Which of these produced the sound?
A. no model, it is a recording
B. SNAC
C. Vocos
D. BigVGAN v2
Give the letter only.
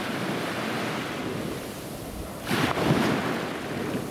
A